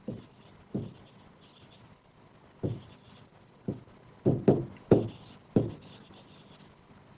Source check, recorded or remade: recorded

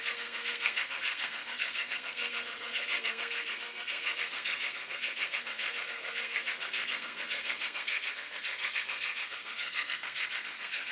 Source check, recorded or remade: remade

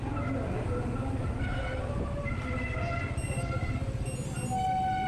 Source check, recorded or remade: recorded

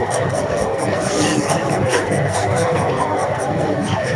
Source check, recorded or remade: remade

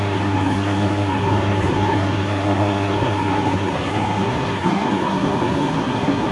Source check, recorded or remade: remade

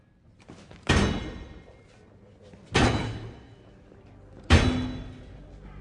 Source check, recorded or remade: recorded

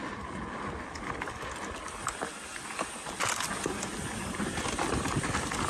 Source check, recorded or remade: recorded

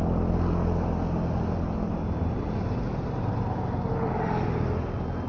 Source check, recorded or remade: recorded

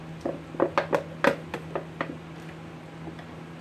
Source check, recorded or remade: recorded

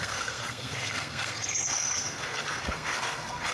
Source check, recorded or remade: remade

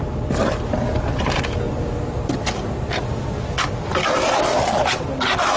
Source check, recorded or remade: recorded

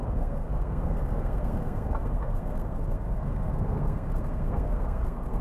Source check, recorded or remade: remade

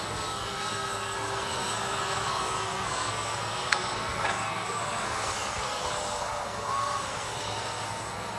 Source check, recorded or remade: remade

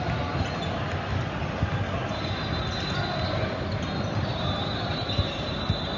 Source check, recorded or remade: recorded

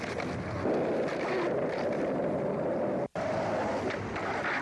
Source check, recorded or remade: recorded